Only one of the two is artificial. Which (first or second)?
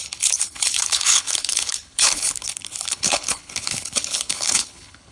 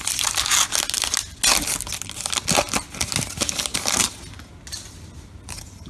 first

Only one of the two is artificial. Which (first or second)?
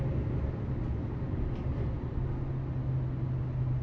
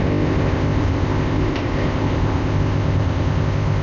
second